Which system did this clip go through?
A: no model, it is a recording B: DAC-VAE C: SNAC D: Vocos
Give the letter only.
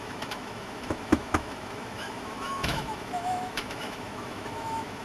B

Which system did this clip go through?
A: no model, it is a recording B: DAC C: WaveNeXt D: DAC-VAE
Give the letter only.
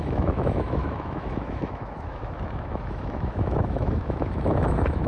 D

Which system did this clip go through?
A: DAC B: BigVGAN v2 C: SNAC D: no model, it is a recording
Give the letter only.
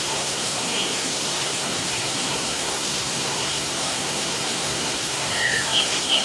C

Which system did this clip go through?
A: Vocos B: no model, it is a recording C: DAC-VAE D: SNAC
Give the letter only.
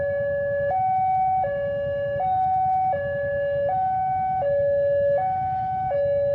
C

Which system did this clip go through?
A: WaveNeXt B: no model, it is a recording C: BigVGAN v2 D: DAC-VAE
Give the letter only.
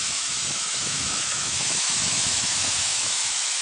D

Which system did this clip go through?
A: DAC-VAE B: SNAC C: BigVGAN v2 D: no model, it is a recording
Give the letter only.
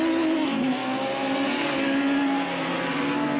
D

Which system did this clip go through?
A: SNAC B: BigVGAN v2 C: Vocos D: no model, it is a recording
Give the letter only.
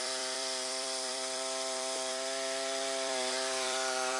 B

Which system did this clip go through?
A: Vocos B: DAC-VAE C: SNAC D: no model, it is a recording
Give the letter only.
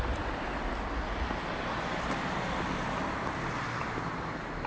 D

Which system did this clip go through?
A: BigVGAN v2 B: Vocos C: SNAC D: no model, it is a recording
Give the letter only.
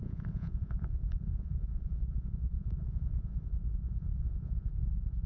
B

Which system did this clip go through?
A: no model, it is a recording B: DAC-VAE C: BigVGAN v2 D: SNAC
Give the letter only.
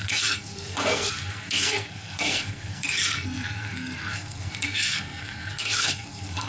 D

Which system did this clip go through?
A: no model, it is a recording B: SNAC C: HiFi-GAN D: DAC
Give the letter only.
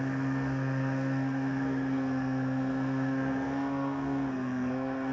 B